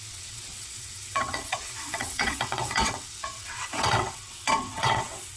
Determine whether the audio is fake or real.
fake